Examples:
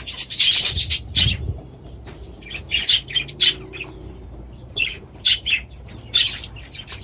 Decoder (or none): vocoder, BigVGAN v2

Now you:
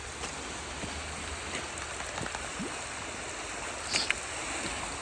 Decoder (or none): none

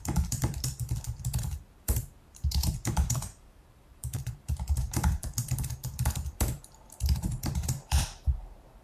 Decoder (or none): vocoder, BigVGAN v2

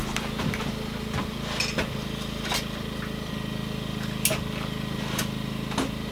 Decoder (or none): none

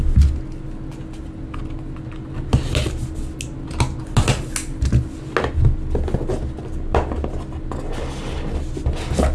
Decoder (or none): none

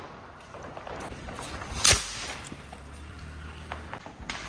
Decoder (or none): vocoder, BigVGAN v2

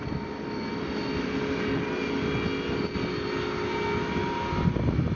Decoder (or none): none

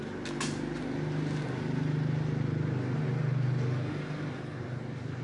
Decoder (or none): none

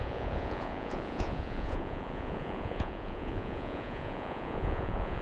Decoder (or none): vocoder, Vocos